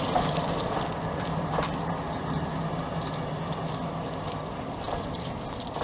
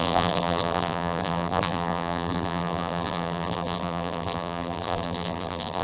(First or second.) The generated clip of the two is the second